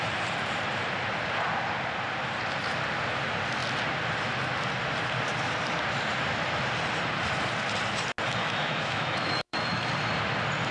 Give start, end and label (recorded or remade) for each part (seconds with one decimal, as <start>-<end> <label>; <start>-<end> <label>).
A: 0.0-8.4 recorded; 8.4-9.9 remade; 9.9-10.7 recorded